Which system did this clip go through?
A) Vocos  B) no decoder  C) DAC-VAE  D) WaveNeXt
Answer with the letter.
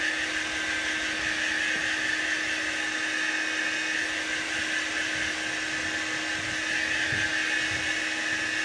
B